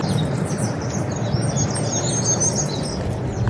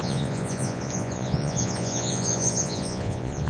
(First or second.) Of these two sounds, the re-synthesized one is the second